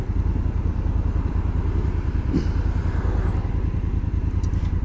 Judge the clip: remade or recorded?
remade